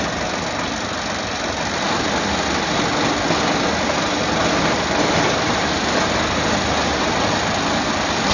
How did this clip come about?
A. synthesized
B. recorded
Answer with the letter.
B